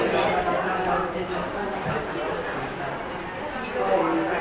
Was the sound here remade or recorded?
recorded